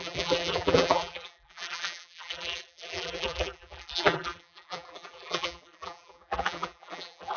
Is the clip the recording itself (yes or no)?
no